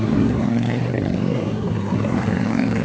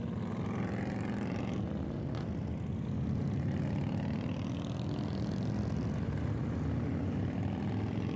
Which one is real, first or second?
second